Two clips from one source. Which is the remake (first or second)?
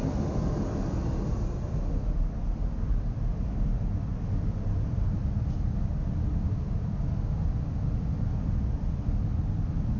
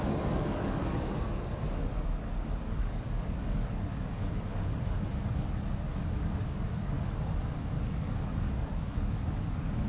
second